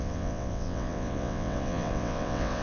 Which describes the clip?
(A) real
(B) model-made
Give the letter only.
B